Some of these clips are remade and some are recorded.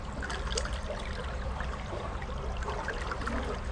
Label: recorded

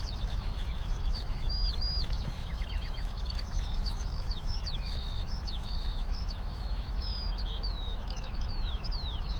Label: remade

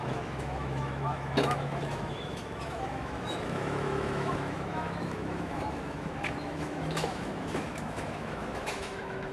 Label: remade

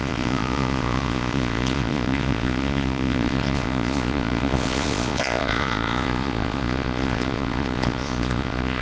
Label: remade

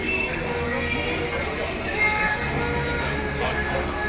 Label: recorded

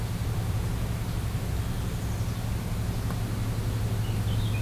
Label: recorded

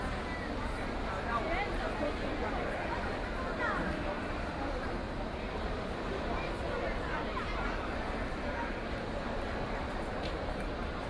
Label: recorded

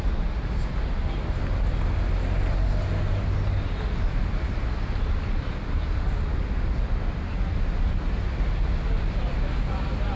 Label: recorded